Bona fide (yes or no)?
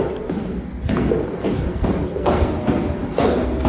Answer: no